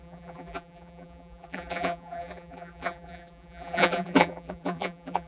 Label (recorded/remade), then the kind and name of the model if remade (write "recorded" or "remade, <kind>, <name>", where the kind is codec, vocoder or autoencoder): remade, vocoder, BigVGAN v2